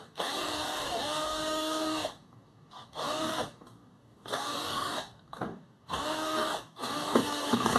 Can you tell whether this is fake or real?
fake